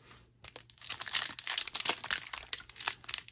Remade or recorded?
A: recorded